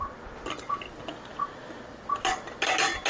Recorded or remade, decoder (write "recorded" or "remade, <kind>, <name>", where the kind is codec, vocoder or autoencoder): recorded